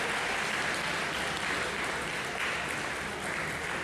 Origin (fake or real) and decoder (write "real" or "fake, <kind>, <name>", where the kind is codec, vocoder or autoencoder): real